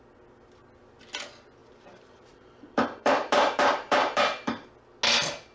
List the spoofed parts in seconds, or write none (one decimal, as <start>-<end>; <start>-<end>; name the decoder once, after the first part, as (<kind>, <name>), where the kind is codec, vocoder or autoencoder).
1.6-4.7 (vocoder, BigVGAN v2)